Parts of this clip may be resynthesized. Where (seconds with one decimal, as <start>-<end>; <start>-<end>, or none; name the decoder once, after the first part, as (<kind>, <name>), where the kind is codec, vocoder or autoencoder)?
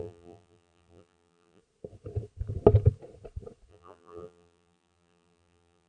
0.0-1.6 (vocoder, BigVGAN v2); 3.7-5.9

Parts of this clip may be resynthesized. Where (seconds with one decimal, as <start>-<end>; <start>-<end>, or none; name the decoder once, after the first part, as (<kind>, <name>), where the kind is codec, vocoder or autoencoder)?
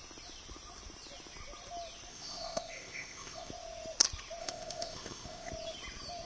2.1-3.5 (codec, ZipCodec); 4.4-5.5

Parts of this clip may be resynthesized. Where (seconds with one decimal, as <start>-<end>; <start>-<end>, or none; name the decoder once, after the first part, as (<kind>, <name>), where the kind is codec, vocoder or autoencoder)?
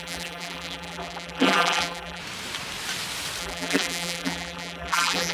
0.0-2.2 (vocoder, BigVGAN v2); 3.4-5.3